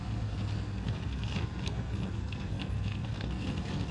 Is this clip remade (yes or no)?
yes